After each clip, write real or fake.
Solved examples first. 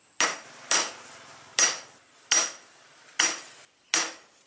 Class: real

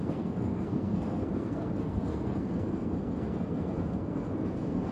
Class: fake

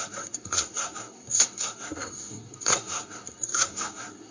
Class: fake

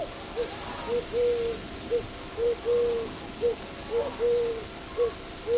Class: fake